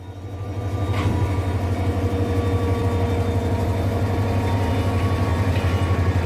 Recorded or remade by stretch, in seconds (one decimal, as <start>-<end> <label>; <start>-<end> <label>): 0.0-6.3 recorded